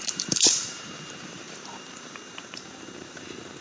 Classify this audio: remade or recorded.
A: remade